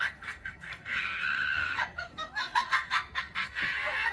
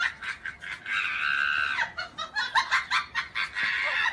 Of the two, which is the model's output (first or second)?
first